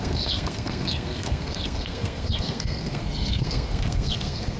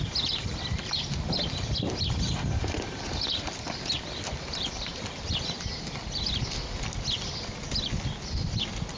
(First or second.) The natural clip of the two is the second